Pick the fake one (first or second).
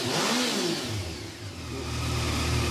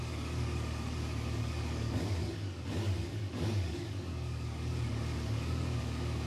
second